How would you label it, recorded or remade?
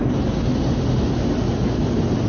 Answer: recorded